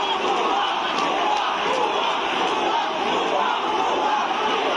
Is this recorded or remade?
recorded